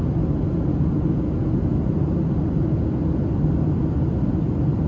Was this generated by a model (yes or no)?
no